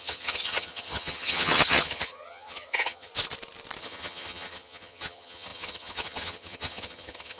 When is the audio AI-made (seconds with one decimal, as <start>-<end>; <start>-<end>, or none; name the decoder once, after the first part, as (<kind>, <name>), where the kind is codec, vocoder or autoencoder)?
0.0-3.1 (vocoder, HiFi-GAN); 3.8-7.4